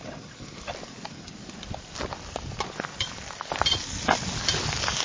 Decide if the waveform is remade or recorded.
remade